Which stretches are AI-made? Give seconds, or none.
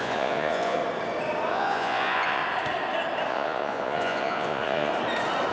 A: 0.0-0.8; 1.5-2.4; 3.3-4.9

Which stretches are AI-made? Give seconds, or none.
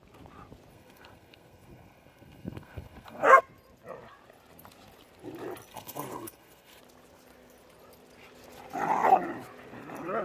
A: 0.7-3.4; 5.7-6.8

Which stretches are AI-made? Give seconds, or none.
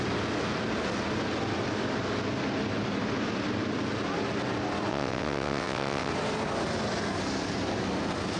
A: 4.9-6.1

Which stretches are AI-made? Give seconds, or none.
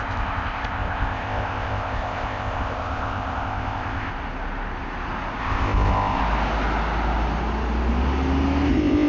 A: 0.0-4.1; 5.4-6.2; 8.7-9.1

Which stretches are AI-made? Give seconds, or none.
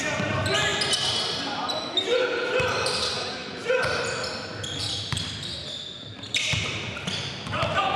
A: none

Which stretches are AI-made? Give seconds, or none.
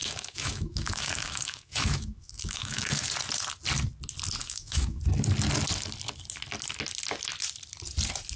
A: 0.0-3.1; 4.4-5.0